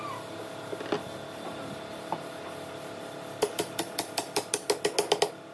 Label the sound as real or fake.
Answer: real